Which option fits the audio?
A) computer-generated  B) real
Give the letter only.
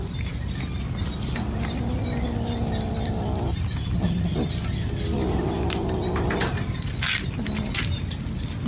B